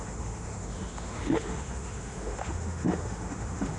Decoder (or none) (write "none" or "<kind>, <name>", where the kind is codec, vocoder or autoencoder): autoencoder, DAC-VAE